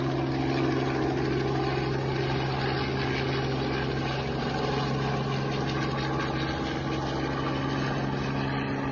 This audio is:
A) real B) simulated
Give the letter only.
A